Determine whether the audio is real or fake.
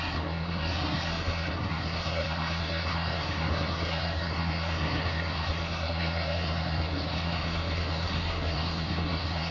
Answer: fake